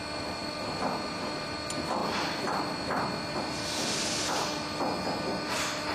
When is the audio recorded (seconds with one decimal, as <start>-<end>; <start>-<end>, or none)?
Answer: 0.0-5.9